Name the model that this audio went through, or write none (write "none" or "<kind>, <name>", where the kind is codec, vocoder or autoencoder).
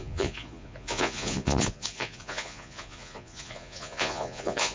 vocoder, Vocos